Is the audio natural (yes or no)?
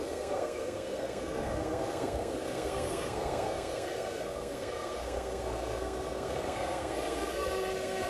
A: no